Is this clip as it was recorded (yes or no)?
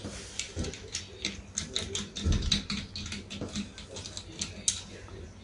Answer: yes